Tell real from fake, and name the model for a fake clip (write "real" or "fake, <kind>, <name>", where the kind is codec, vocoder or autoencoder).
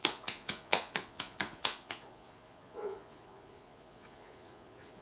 fake, vocoder, Vocos